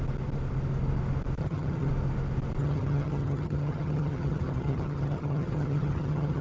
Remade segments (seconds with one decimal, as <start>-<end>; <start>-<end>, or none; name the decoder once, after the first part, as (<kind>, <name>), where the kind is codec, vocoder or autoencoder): 1.4-1.9 (vocoder, HiFi-GAN); 2.6-6.4